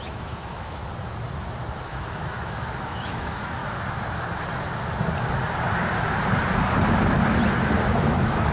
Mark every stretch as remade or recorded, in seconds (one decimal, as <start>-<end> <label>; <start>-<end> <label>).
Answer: 0.0-0.8 remade; 0.8-1.8 recorded; 1.8-3.6 remade; 3.6-8.0 recorded; 8.0-8.5 remade